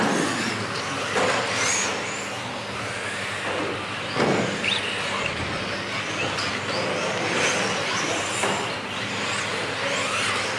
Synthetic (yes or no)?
no